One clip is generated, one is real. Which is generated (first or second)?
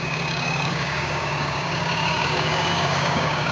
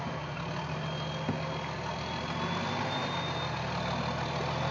first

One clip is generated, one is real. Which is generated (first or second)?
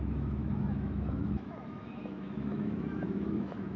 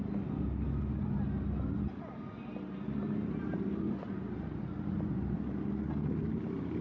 first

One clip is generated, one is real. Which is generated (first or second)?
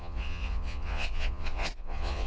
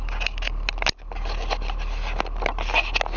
first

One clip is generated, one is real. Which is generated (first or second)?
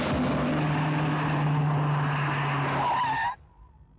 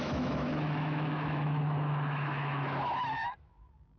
second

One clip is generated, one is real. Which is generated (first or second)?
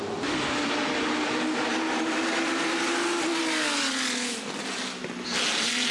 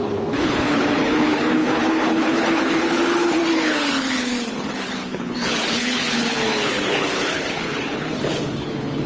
second